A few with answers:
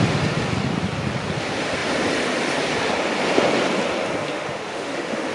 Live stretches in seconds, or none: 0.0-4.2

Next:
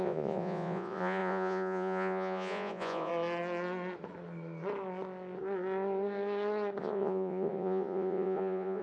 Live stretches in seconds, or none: 3.1-6.8

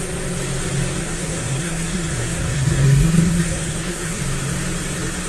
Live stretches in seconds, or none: 0.0-1.0; 4.2-5.3